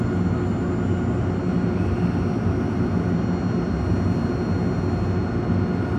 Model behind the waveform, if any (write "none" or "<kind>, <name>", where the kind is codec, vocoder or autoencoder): none